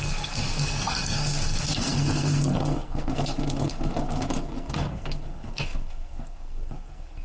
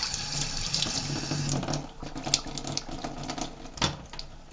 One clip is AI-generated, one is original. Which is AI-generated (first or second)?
first